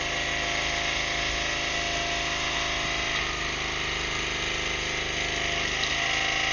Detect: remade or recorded recorded